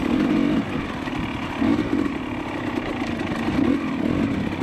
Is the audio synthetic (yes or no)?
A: no